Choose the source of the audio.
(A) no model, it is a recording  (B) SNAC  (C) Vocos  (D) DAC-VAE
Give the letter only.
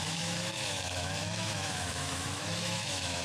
D